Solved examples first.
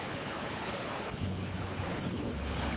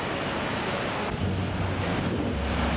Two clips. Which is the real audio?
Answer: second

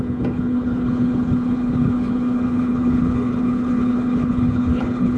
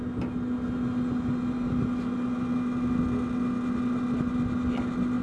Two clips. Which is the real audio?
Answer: second